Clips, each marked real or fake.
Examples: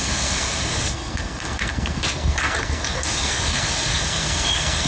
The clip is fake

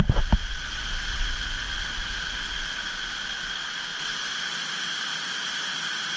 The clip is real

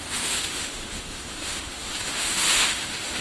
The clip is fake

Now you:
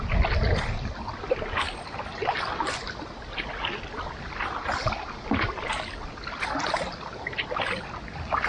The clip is real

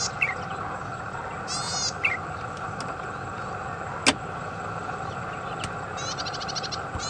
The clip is real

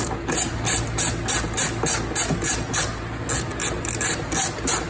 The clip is real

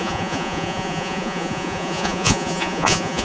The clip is fake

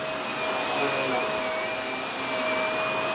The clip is real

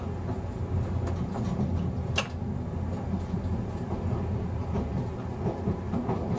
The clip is real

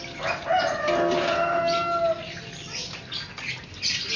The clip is real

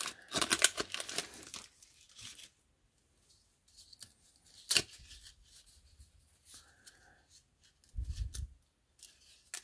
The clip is real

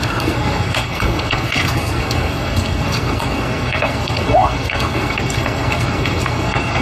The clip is fake